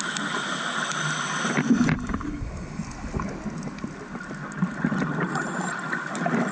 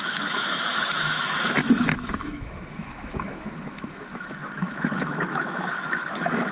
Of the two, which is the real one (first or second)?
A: first